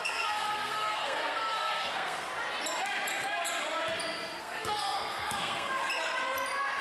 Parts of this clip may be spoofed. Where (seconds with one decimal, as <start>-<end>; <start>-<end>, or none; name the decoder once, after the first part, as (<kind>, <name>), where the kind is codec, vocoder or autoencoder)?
0.0-2.3 (codec, SNAC); 4.4-5.8